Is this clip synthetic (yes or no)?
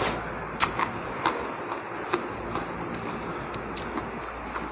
no